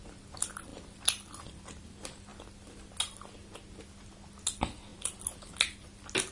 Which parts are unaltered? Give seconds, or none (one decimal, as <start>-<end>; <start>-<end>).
0.0-6.3